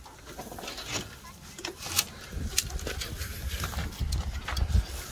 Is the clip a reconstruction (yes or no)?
no